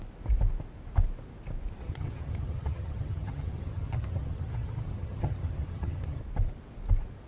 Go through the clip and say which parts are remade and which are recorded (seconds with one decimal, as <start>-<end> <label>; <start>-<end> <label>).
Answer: 0.0-1.8 recorded; 1.8-6.2 remade; 6.2-7.3 recorded

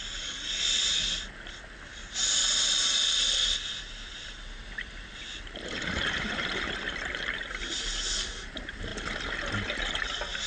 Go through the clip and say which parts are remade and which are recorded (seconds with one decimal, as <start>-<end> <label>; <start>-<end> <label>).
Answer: 0.0-0.5 remade; 0.5-10.5 recorded

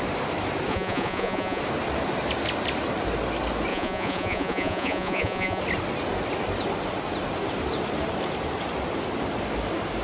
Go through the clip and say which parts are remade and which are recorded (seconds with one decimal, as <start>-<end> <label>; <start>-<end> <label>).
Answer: 0.0-0.7 recorded; 0.7-1.6 remade; 1.6-3.7 recorded; 3.7-5.6 remade; 5.6-10.0 recorded